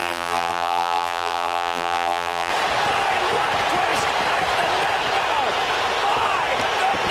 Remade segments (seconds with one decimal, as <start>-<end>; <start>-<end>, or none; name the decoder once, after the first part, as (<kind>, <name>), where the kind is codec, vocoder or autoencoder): 0.0-2.5 (vocoder, BigVGAN v2)